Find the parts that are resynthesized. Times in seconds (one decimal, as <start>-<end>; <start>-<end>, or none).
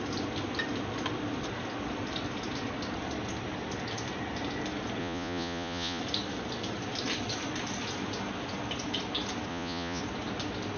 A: 5.0-6.0; 9.5-10.0